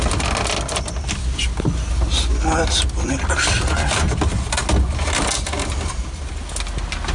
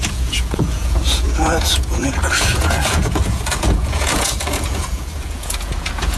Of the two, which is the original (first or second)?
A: first